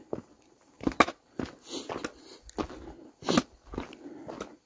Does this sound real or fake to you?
real